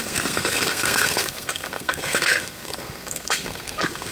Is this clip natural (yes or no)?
no